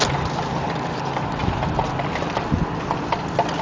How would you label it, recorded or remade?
recorded